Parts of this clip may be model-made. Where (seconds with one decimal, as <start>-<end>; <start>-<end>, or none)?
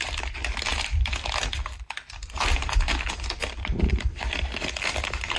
none